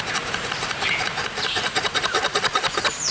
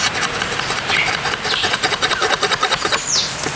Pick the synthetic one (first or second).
first